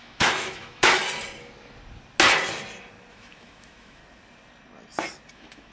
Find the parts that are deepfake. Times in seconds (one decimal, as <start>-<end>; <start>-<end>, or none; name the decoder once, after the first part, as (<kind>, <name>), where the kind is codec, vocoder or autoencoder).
0.0-1.0 (autoencoder, DAC-VAE); 3.1-4.0; 5.3-5.7